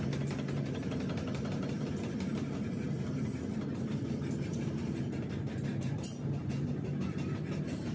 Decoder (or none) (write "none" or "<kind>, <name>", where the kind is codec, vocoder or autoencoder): none